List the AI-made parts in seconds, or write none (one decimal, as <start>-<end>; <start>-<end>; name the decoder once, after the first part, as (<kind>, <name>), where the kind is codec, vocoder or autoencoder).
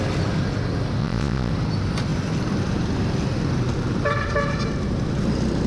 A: 1.0-1.5 (vocoder, Vocos)